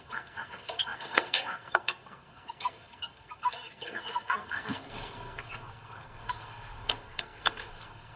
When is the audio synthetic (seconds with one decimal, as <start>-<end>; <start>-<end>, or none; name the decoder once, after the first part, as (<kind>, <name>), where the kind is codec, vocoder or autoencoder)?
0.0-8.2 (codec, SNAC)